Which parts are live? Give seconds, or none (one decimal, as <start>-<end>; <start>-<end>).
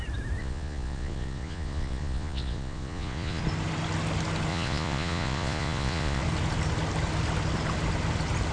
0.0-0.4; 3.4-4.5; 6.2-8.5